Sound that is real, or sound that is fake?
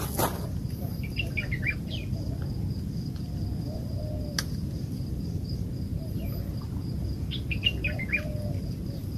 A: real